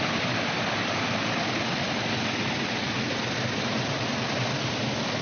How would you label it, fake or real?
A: real